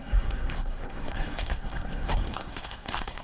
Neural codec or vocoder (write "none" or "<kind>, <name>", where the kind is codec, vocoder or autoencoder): codec, SNAC